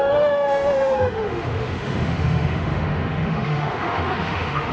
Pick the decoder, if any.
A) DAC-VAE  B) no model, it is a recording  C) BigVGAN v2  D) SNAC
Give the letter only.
A